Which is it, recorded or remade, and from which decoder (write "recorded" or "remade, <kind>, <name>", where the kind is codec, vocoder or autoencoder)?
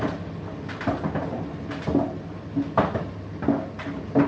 recorded